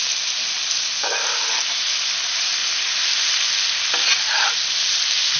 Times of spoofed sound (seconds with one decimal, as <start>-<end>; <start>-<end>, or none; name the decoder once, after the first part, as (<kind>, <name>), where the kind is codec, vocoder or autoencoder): none